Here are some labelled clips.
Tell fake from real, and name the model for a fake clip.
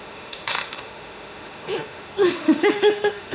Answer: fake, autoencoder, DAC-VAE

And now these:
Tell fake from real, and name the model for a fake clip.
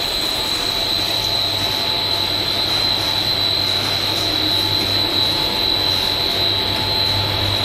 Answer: real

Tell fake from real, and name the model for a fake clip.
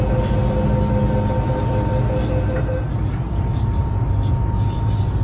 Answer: real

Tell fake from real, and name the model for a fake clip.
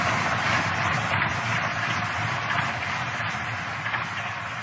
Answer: real